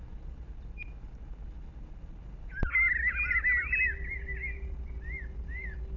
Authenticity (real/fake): real